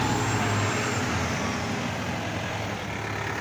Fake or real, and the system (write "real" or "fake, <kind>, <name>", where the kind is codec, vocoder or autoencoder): real